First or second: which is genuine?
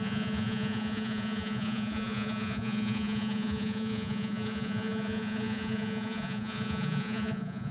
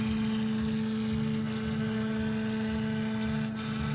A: second